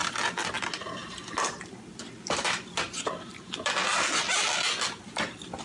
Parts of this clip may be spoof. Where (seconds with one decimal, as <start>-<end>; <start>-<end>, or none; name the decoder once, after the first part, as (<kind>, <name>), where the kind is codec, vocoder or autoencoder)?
none